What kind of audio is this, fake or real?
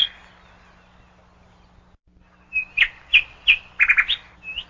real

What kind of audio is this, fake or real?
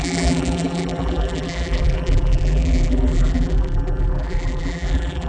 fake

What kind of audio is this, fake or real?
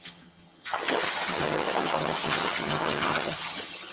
fake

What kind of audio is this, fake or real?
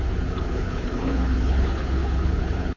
fake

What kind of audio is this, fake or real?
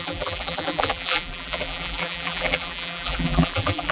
fake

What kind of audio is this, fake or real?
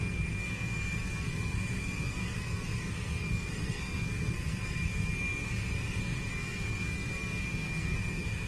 fake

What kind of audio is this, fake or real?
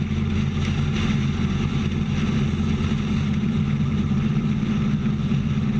real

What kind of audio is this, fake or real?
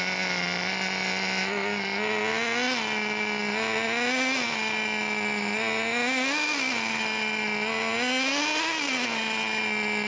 real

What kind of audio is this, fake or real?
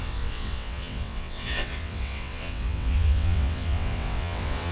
fake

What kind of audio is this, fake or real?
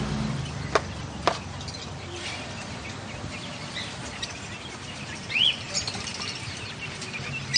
real